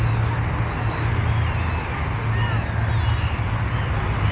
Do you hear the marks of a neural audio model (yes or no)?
no